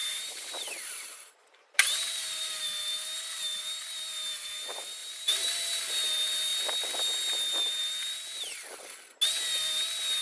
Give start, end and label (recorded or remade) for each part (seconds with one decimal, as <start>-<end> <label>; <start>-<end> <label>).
0.0-2.5 remade; 2.5-5.0 recorded; 5.0-5.8 remade; 5.8-10.2 recorded